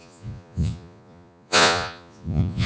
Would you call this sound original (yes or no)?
no